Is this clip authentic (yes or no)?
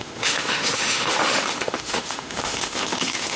no